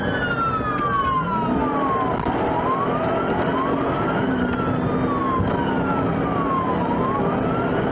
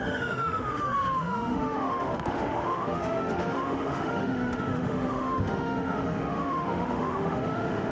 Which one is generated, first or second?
second